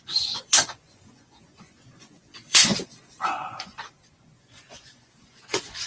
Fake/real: fake